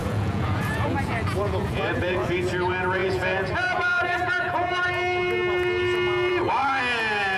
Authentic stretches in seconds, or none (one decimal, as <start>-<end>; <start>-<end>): 2.3-3.0; 4.9-7.4